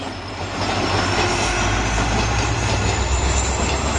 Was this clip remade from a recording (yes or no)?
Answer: no